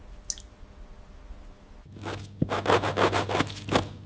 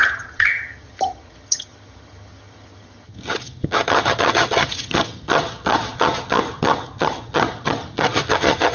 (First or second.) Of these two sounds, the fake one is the second